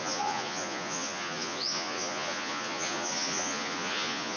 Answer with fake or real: fake